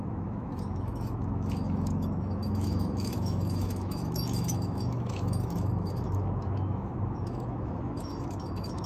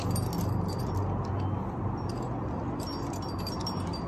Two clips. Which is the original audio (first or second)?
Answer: second